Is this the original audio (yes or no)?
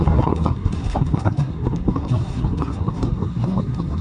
no